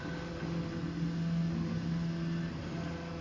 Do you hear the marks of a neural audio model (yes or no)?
no